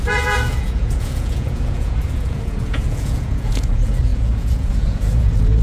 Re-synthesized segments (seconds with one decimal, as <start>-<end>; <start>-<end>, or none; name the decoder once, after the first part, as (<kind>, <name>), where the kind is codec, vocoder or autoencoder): 0.0-5.6 (vocoder, Vocos)

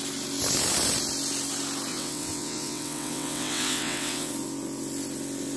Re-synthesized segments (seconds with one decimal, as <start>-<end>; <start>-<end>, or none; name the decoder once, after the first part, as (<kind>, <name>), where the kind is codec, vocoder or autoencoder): 1.9-4.3 (vocoder, WaveNeXt)

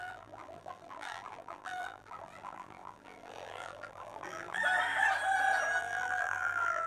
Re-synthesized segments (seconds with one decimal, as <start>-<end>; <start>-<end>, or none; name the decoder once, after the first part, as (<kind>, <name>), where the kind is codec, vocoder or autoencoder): 0.0-4.6 (vocoder, BigVGAN v2); 5.8-6.9

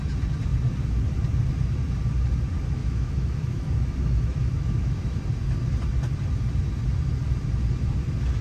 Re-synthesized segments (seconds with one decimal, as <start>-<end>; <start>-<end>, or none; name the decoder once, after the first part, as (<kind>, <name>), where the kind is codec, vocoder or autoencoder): 2.8-5.2 (autoencoder, DAC-VAE)

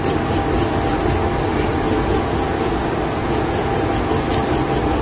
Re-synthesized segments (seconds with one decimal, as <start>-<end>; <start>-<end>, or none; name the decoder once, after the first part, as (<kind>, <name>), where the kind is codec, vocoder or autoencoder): 1.7-2.7 (vocoder, Vocos); 3.2-3.9